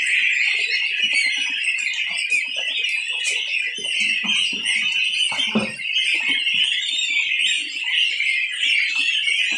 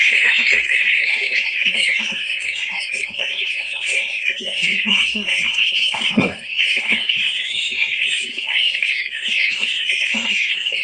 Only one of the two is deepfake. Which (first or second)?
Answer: second